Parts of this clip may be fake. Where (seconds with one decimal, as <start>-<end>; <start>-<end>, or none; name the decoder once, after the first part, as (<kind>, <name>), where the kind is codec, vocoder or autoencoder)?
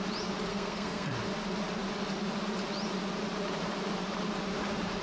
0.5-1.1 (codec, SNAC)